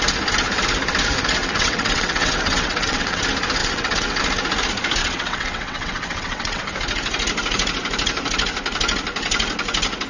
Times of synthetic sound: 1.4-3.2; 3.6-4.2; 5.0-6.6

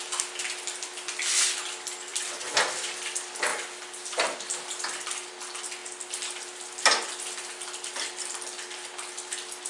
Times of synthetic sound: 2.1-3.1

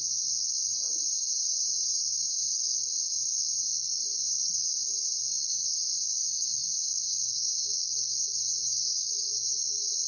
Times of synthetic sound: 0.0-1.3; 2.0-10.1

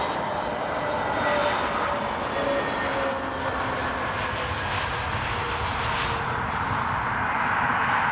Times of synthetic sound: none